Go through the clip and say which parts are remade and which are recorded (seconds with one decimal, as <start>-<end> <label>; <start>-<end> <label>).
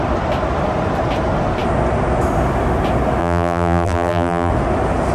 0.0-3.2 recorded; 3.2-4.5 remade; 4.5-5.1 recorded